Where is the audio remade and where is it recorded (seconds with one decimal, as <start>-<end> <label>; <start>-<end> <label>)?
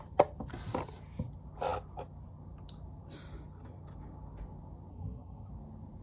0.0-4.9 recorded; 4.9-5.5 remade; 5.5-6.0 recorded